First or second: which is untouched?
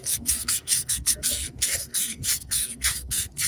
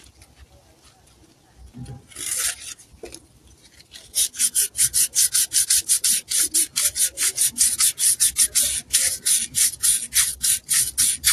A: second